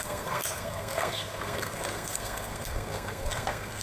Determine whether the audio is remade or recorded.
remade